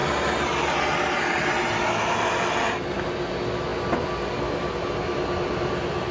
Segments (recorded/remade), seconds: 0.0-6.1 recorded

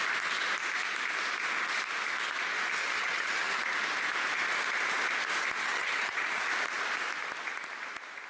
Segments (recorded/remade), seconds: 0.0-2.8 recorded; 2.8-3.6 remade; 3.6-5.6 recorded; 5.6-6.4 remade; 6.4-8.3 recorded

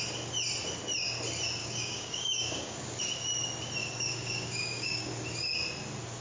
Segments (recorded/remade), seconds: 0.0-1.6 recorded; 1.6-2.8 remade; 2.8-3.8 recorded; 3.8-5.1 remade; 5.1-6.2 recorded